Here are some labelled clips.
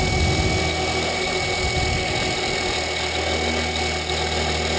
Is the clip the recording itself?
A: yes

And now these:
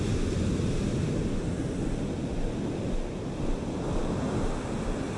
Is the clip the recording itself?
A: yes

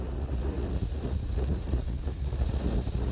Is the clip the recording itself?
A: no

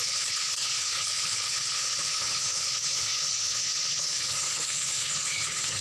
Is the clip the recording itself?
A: no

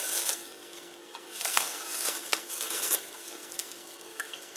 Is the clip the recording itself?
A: no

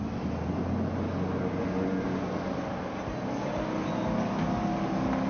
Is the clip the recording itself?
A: yes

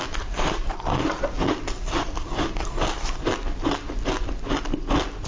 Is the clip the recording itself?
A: yes